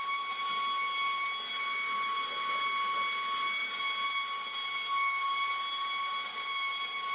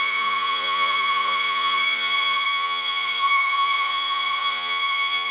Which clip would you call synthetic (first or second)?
second